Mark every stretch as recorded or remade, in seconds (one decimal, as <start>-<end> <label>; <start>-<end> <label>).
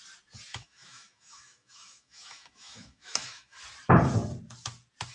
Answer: 0.0-0.5 recorded; 0.5-3.6 remade; 3.6-5.1 recorded